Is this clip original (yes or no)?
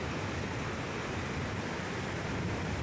yes